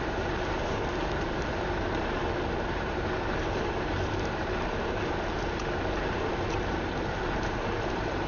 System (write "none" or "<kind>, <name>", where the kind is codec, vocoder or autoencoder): vocoder, BigVGAN v2